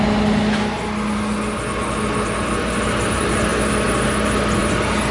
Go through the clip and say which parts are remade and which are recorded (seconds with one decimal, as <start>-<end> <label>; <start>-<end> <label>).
0.0-5.1 recorded

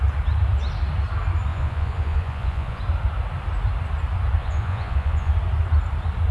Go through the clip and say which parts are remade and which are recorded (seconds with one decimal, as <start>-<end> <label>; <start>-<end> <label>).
0.0-1.5 recorded; 1.5-2.8 remade; 2.8-4.4 recorded; 4.4-5.3 remade; 5.3-6.3 recorded

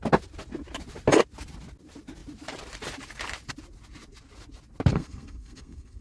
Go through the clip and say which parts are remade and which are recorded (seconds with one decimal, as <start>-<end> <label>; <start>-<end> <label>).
0.0-4.9 recorded; 4.9-6.0 remade

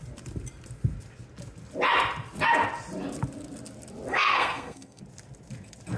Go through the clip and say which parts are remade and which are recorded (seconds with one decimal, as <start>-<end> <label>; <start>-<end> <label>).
0.0-4.1 recorded; 4.1-5.0 remade; 5.0-6.0 recorded

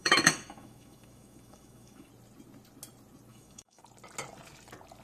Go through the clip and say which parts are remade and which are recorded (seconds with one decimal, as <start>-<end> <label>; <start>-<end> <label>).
0.0-2.1 remade; 2.1-3.3 recorded; 3.3-3.8 remade; 3.8-5.0 recorded

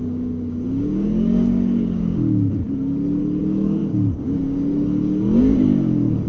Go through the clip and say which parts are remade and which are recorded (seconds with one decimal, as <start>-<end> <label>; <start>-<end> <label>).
0.0-2.6 remade; 2.6-3.4 recorded; 3.4-6.3 remade